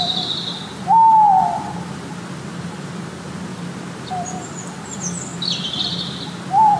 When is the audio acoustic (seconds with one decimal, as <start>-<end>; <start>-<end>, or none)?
0.0-6.8